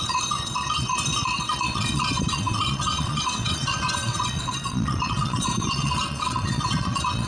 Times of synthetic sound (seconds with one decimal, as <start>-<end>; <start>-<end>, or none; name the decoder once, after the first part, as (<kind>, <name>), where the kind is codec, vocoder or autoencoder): 0.0-7.3 (vocoder, WaveNeXt)